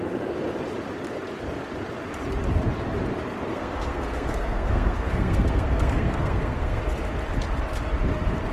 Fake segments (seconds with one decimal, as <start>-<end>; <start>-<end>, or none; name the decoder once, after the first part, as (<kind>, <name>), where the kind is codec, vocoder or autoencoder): 3.5-6.8 (codec, SNAC)